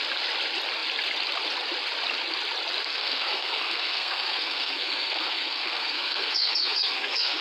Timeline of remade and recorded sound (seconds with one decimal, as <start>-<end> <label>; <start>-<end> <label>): 0.0-2.9 recorded; 2.9-7.4 remade

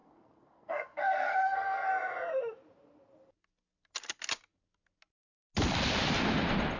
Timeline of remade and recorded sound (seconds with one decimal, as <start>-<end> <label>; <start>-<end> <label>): 0.0-1.9 remade; 1.9-6.8 recorded

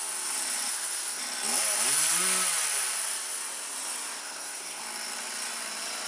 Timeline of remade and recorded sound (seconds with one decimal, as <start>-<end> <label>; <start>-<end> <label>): 0.0-0.7 recorded; 0.7-1.2 remade; 1.2-4.2 recorded; 4.2-4.8 remade; 4.8-6.1 recorded

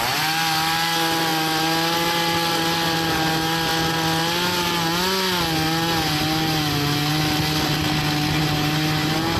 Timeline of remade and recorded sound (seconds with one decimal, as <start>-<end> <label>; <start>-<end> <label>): 0.0-9.4 recorded

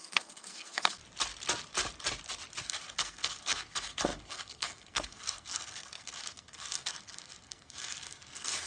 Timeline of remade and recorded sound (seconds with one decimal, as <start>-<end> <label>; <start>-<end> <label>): 0.0-1.0 remade; 1.0-2.6 recorded; 2.6-8.7 remade

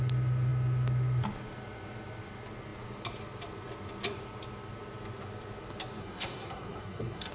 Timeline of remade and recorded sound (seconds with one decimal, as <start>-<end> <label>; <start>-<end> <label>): 0.0-6.0 recorded; 6.0-7.3 remade